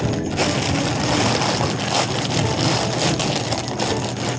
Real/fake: real